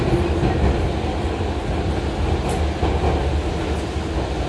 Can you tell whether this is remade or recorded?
recorded